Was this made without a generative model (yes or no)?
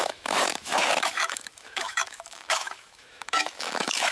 no